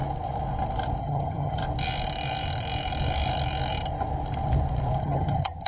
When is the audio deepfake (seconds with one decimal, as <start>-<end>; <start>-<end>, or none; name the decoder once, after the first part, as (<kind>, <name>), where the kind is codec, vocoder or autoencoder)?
1.0-1.6 (vocoder, HiFi-GAN); 5.0-5.7